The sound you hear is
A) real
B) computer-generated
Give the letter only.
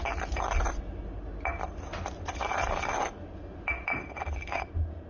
A